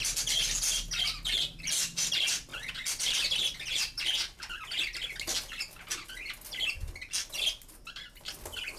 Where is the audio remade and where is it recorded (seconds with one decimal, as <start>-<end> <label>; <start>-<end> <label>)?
0.0-8.8 recorded